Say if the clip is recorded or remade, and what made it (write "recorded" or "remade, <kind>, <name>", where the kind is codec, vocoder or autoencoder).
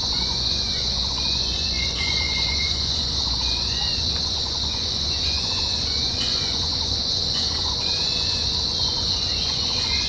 remade, vocoder, Vocos